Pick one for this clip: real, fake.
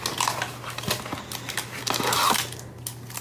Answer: real